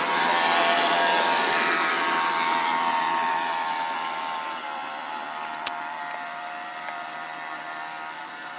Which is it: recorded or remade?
recorded